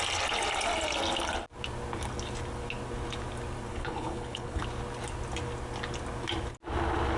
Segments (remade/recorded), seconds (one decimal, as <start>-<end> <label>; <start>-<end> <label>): 0.0-3.7 recorded; 3.7-4.6 remade; 4.6-7.2 recorded